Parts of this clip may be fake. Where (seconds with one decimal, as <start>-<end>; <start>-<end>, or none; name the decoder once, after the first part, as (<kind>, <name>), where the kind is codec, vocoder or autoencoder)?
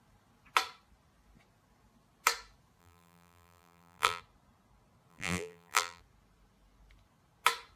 2.8-4.2 (vocoder, BigVGAN v2); 5.1-6.0